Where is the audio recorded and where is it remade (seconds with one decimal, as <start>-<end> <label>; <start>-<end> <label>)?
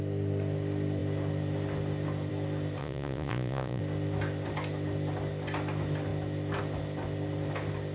0.0-2.8 recorded; 2.8-3.8 remade; 3.8-7.9 recorded